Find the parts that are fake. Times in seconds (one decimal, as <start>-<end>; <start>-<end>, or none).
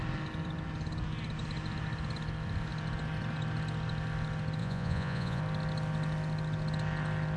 4.6-5.4